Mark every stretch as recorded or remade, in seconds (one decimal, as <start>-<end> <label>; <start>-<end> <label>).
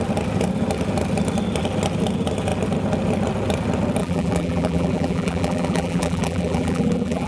0.0-4.0 recorded; 4.0-7.3 remade